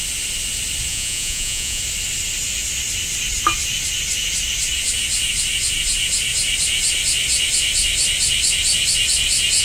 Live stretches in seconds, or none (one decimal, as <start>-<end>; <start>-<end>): 0.0-0.9; 1.8-9.6